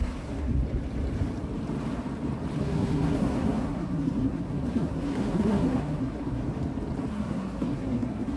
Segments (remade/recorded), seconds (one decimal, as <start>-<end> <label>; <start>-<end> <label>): 0.0-0.6 remade; 0.6-2.6 recorded; 2.6-6.4 remade; 6.4-7.1 recorded; 7.1-8.4 remade

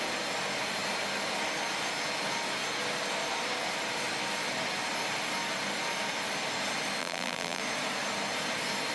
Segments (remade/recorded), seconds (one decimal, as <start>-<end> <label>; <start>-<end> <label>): 0.0-7.0 recorded; 7.0-7.6 remade; 7.6-8.9 recorded

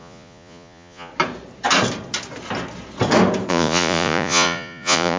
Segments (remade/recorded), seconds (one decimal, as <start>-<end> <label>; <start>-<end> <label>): 0.0-1.1 remade; 1.1-3.5 recorded; 3.5-5.2 remade

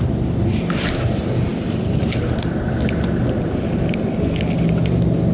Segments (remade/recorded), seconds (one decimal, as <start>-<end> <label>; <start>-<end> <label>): 0.0-5.3 recorded

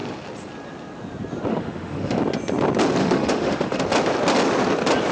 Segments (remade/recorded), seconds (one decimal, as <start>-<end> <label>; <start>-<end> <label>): 0.0-1.5 recorded; 1.5-2.2 remade; 2.2-3.0 recorded; 3.0-3.8 remade; 3.8-5.1 recorded

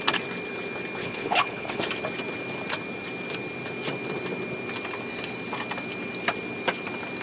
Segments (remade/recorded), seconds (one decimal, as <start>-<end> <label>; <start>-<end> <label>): 0.0-1.0 recorded; 1.0-1.8 remade; 1.8-7.2 recorded

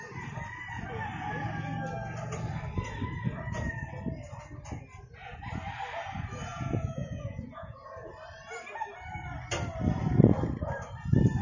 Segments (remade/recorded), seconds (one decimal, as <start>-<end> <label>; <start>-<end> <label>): 0.0-6.5 recorded; 6.5-8.1 remade; 8.1-11.4 recorded

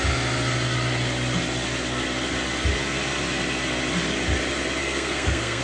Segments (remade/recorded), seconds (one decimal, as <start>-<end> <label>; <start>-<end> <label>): 0.0-4.8 recorded; 4.8-5.6 remade